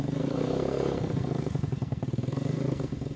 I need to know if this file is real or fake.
fake